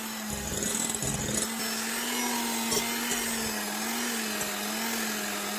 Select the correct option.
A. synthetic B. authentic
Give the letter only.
B